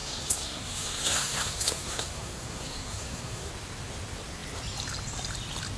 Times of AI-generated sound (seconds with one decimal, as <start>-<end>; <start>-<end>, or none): 0.0-3.5